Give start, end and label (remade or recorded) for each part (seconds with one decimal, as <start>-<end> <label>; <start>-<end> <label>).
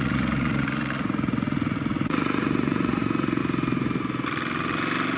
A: 0.0-3.4 remade; 3.4-5.2 recorded